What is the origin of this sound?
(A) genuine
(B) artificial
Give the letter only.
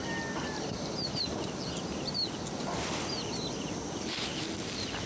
A